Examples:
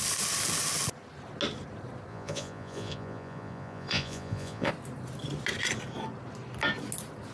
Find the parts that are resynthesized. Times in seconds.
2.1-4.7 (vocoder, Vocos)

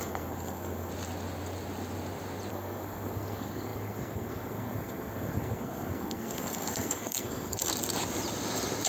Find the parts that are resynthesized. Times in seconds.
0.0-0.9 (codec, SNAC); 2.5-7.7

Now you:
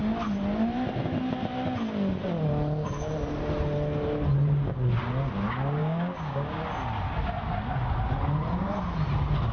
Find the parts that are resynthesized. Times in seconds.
5.8-6.6 (codec, DAC)

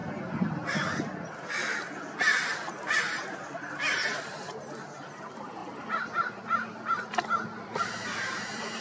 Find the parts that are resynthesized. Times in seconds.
3.0-4.0 (vocoder, BigVGAN v2); 4.8-5.6; 7.8-8.8

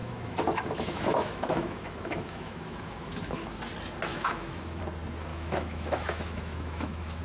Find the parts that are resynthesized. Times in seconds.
0.0-3.6 (autoencoder, DAC-VAE); 4.1-4.8; 5.3-7.2

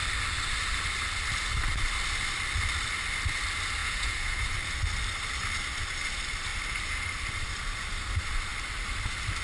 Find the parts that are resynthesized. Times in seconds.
3.8-4.5 (vocoder, Vocos)

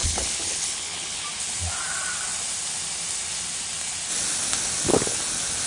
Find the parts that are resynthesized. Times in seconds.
0.0-1.2 (codec, HILCodec)

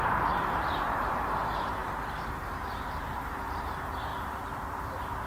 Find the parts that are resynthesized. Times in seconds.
0.0-1.8 (vocoder, BigVGAN v2); 2.3-4.1